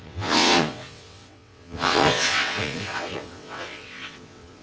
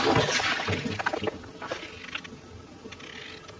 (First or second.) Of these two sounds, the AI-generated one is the first